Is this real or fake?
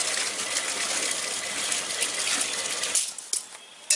real